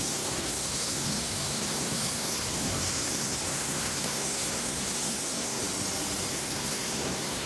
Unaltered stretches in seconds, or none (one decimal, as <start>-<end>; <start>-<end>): 5.6-6.3